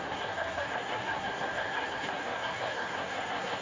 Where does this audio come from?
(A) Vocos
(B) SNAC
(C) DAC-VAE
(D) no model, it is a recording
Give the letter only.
B